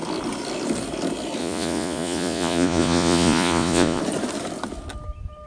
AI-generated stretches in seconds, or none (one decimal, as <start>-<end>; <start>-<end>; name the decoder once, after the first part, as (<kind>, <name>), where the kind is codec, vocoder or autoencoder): 1.4-4.0 (vocoder, Vocos)